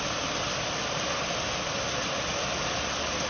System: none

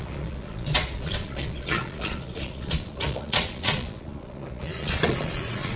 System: vocoder, Vocos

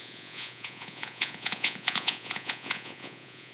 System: vocoder, Vocos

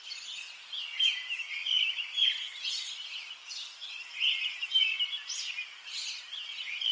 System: none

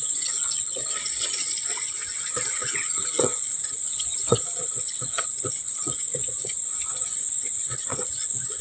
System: vocoder, Vocos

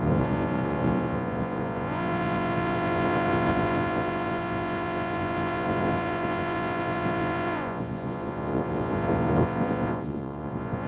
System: vocoder, Vocos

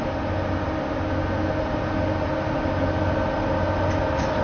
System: none